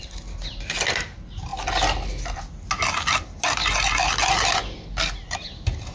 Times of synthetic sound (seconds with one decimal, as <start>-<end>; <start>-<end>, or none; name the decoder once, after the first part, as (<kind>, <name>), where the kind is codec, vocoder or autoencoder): none